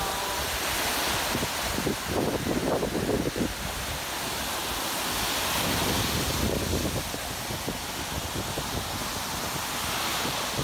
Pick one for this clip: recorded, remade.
recorded